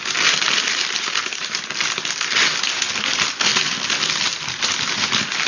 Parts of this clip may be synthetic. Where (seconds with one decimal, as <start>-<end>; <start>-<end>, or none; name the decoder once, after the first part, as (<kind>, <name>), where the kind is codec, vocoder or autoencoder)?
none